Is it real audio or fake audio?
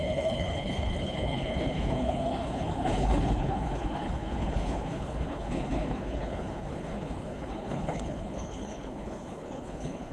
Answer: fake